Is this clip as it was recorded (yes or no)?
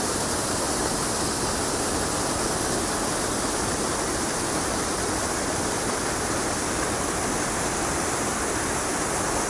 yes